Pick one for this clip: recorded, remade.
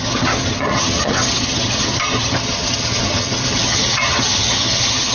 remade